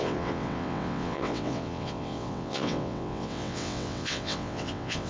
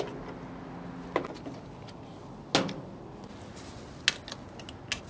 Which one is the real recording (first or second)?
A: second